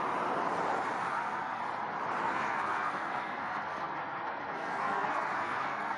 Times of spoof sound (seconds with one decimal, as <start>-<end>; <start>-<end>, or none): 1.1-1.6; 2.2-6.0